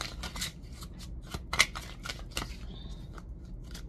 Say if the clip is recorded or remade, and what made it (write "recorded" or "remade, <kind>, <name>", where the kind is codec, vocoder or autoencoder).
recorded